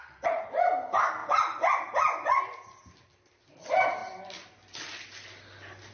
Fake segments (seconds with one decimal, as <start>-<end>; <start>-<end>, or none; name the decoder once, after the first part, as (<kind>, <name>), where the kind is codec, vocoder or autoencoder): none

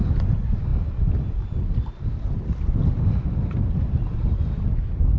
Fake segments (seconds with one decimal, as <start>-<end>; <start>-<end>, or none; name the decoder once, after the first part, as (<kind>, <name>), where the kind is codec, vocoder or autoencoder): none

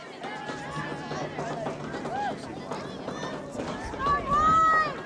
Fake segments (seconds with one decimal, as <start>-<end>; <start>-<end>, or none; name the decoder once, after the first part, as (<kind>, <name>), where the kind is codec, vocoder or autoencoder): none

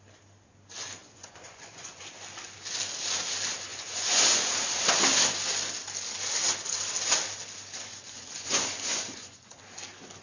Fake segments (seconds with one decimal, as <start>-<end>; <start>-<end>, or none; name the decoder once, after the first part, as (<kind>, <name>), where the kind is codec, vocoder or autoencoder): 1.0-2.1 (vocoder, Vocos); 3.7-4.5; 7.9-9.6

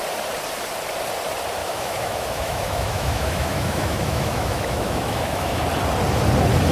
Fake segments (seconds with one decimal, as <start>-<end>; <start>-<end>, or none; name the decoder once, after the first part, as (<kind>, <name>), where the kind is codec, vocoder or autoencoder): 1.6-5.6 (autoencoder, DAC-VAE)